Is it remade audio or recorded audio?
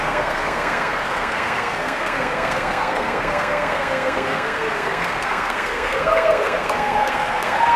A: remade